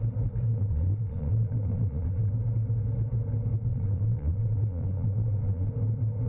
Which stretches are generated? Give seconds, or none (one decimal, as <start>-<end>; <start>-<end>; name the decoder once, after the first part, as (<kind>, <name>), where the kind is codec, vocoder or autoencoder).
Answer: 0.5-2.3 (vocoder, Vocos); 3.7-5.7